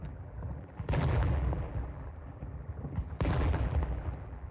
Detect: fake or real fake